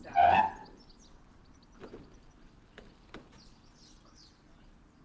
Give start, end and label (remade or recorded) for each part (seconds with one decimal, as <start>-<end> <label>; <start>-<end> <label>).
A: 0.0-5.0 recorded